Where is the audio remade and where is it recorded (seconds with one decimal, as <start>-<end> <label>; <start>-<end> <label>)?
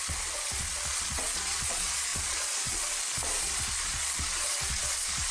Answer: 0.0-5.3 remade